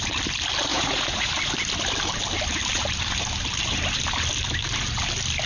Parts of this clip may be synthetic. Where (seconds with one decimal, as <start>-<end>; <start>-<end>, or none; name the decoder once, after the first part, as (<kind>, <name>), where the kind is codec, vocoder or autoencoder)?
0.7-1.3 (vocoder, Vocos)

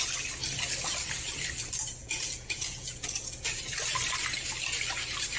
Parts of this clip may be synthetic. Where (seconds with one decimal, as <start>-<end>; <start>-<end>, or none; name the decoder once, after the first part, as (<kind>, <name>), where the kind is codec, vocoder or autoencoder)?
2.0-3.6 (vocoder, Vocos)